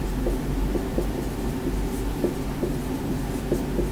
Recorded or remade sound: recorded